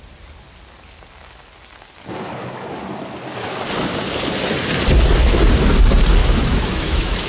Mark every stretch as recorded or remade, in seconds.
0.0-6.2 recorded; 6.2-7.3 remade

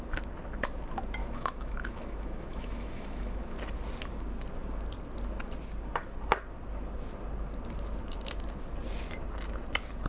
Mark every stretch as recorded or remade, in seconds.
0.0-1.2 recorded; 1.2-3.4 remade; 3.4-10.1 recorded

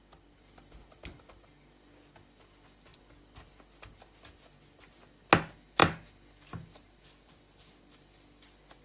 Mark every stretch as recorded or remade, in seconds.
0.0-8.8 recorded

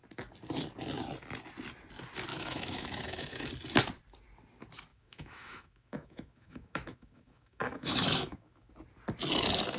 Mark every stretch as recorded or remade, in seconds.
0.0-2.3 recorded; 2.3-3.5 remade; 3.5-4.9 recorded; 4.9-8.7 remade; 8.7-9.8 recorded